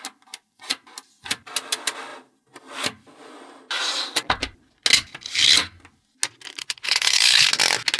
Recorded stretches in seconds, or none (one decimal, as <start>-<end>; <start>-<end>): 0.0-6.6; 7.5-8.0